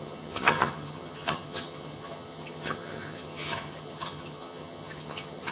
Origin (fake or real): fake